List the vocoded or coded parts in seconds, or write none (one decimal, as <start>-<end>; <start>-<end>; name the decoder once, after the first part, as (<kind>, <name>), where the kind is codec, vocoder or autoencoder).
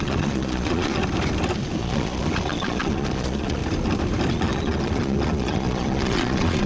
0.0-1.0 (vocoder, Vocos); 1.8-3.6; 4.3-6.7